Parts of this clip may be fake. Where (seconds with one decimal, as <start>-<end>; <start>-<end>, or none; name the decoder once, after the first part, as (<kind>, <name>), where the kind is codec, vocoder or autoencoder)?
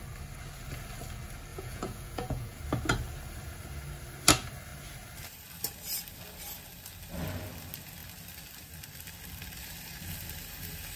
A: 1.5-2.6 (vocoder, Vocos)